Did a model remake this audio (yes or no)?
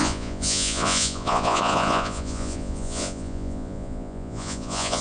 yes